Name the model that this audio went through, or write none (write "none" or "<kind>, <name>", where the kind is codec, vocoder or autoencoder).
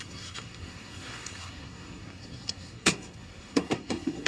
codec, SNAC